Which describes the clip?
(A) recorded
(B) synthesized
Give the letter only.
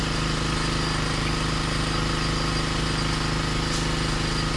A